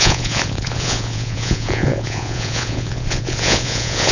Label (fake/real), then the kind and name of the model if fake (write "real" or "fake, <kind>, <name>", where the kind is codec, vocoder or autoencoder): fake, vocoder, Vocos